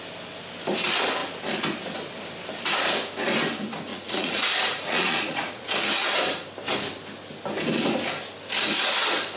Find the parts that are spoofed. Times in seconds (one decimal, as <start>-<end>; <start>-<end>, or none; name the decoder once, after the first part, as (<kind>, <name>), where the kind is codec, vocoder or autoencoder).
3.9-5.7 (vocoder, Vocos)